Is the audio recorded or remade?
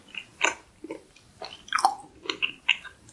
recorded